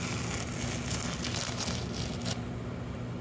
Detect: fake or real real